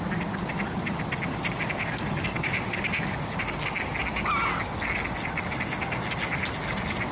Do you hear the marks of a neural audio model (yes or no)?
no